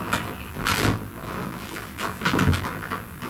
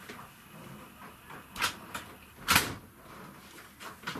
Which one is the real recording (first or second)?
second